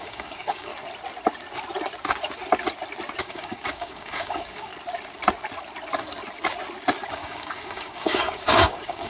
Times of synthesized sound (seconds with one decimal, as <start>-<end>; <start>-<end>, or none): 0.0-0.7; 3.2-4.7; 7.1-9.1